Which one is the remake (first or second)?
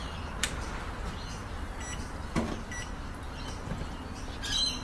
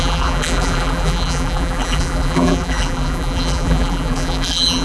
second